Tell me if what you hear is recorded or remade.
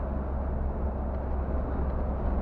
recorded